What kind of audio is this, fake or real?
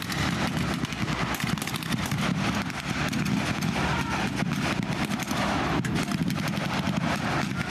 real